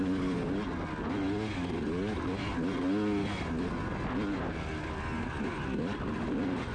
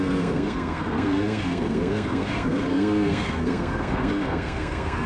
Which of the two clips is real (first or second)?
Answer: first